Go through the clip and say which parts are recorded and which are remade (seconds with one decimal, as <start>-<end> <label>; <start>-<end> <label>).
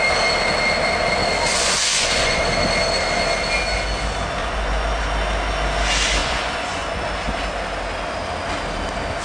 0.0-1.5 recorded; 1.5-2.4 remade; 2.4-4.4 recorded; 4.4-5.0 remade; 5.0-6.2 recorded; 6.2-7.0 remade; 7.0-9.2 recorded